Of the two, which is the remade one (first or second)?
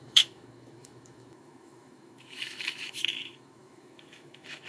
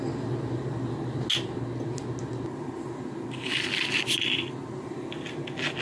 first